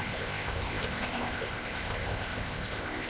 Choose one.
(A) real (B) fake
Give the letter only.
B